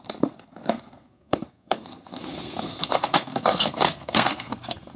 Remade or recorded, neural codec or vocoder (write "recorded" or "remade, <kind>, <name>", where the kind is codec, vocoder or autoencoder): remade, codec, SNAC